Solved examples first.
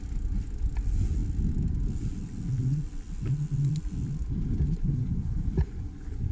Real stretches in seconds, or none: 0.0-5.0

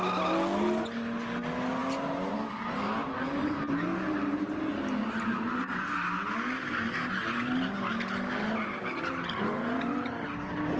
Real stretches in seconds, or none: 0.0-10.8

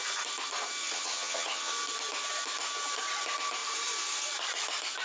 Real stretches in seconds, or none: 0.0-0.8; 1.7-5.0

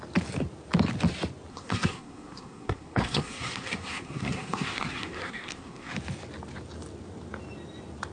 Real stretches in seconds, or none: 0.0-1.5; 5.9-8.1

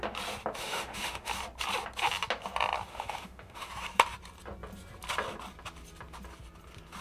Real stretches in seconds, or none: 0.0-0.6; 1.3-2.9; 3.7-7.0